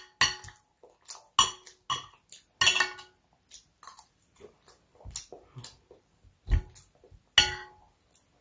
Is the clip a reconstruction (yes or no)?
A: no